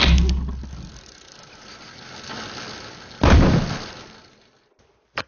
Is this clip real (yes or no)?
yes